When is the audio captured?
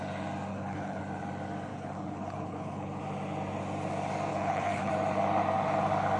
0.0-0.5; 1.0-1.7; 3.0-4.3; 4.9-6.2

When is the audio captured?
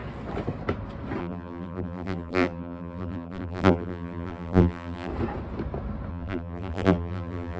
0.0-1.2; 5.1-6.1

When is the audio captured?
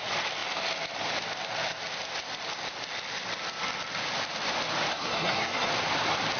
0.0-4.9; 5.7-6.4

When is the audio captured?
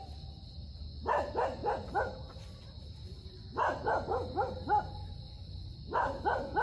0.0-6.6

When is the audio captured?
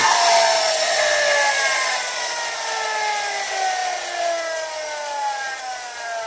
0.0-6.3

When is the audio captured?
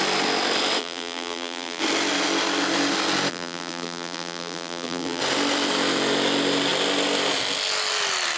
0.0-0.8; 1.8-3.3; 5.2-8.4